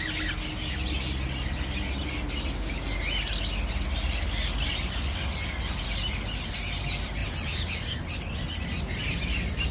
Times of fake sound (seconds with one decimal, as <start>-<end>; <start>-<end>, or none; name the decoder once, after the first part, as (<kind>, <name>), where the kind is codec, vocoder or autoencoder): none